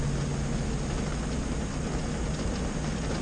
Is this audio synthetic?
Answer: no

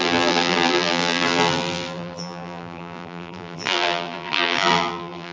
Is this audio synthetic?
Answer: yes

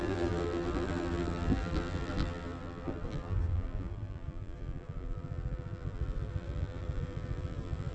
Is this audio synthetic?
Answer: yes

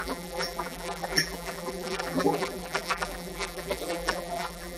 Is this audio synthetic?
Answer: yes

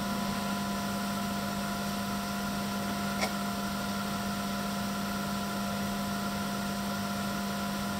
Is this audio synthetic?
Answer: no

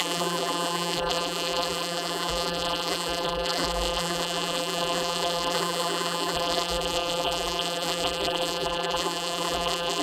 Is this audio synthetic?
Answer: yes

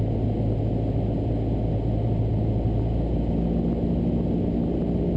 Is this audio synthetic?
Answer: no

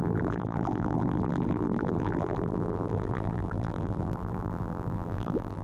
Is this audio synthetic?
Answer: yes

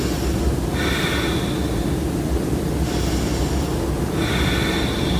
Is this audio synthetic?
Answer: no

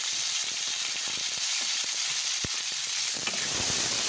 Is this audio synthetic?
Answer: yes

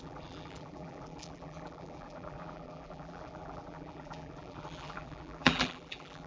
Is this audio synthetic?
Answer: yes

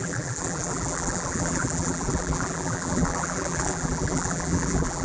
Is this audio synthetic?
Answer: yes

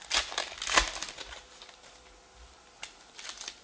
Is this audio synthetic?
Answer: no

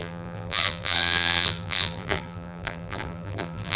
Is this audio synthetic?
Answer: yes